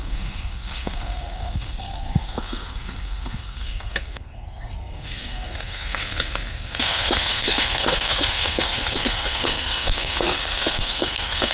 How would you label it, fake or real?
fake